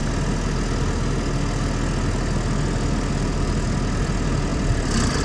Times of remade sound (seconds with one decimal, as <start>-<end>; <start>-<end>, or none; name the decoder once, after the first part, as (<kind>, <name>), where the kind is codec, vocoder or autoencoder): 4.5-5.2 (vocoder, BigVGAN v2)